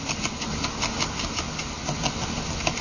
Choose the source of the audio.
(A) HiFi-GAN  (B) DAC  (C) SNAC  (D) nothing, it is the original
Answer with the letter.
D